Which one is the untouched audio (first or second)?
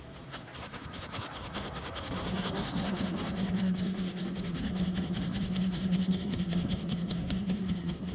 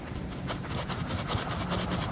second